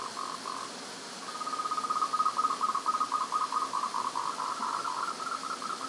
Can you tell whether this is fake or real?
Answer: real